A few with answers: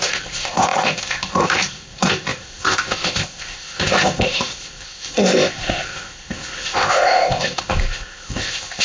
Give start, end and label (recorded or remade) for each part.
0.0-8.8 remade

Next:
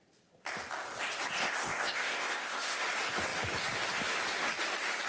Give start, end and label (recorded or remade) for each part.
0.0-1.4 recorded; 1.4-2.8 remade; 2.8-5.1 recorded

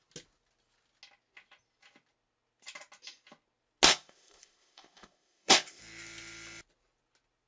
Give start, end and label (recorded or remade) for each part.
0.0-3.9 recorded; 3.9-5.8 remade; 5.8-7.5 recorded

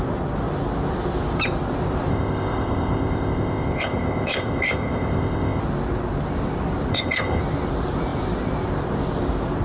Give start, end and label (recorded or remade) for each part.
0.0-2.1 recorded; 2.1-5.6 remade; 5.6-6.9 recorded; 6.9-7.4 remade; 7.4-9.6 recorded

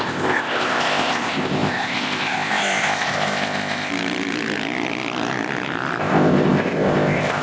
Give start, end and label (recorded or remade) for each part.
0.0-3.9 remade; 3.9-6.0 recorded; 6.0-7.4 remade

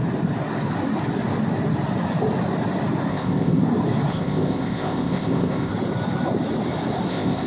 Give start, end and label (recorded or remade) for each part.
0.0-3.1 recorded; 3.1-3.6 remade; 3.6-4.1 recorded; 4.1-5.7 remade; 5.7-7.1 recorded; 7.1-7.5 remade